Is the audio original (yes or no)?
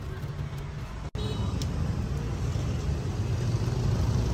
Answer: yes